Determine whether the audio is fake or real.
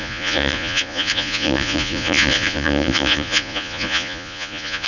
fake